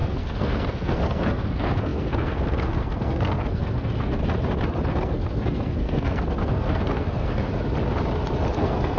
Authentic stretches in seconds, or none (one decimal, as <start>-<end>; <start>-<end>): 4.2-4.9; 7.5-8.5

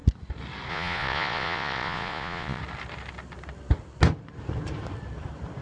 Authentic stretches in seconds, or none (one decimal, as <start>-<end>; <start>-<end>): 0.0-0.7; 2.6-5.6

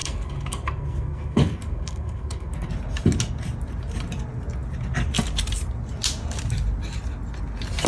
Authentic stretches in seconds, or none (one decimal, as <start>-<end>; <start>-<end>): 2.7-7.9

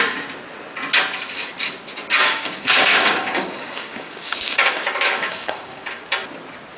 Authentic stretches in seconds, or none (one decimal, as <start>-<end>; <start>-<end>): 0.0-2.1; 6.0-6.8

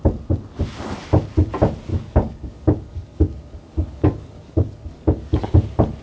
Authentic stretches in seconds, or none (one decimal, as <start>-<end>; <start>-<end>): 0.0-1.9; 5.5-6.0

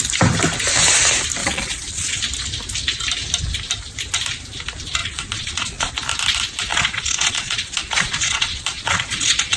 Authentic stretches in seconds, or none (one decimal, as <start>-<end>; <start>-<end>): 0.0-1.4; 2.2-5.0; 5.9-6.7

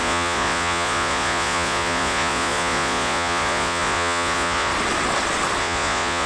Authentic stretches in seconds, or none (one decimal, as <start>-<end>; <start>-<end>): 4.7-5.6

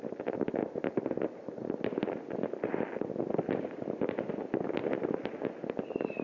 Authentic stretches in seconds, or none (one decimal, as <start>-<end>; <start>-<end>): 0.0-6.2